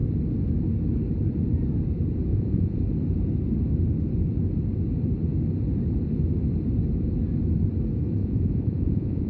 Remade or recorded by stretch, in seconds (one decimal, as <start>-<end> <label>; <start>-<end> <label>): 0.0-2.3 recorded; 2.3-2.8 remade; 2.8-8.2 recorded; 8.2-9.3 remade